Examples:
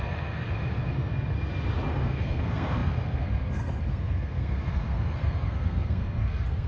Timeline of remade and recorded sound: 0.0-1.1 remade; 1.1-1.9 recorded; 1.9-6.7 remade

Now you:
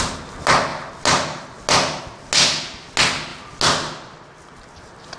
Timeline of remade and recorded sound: 0.0-5.2 recorded

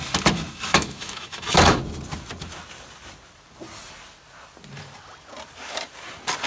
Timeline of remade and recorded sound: 0.0-0.7 recorded; 0.7-1.8 remade; 1.8-6.5 recorded

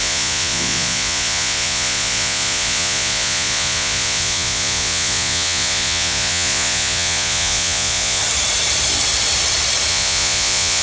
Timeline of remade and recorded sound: 0.0-8.2 remade; 8.2-9.9 recorded; 9.9-10.8 remade

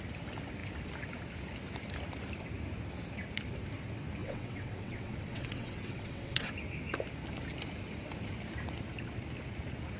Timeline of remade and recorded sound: 0.0-4.2 recorded; 4.2-6.5 remade; 6.5-10.0 recorded